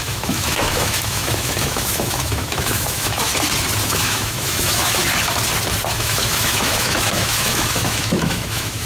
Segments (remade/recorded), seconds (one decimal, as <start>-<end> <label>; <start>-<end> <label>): 0.0-3.3 remade; 3.3-3.9 recorded; 3.9-5.0 remade; 5.0-5.9 recorded; 5.9-8.9 remade